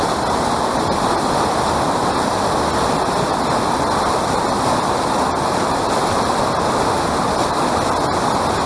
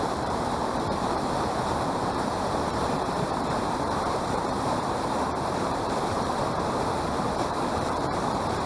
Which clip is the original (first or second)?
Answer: first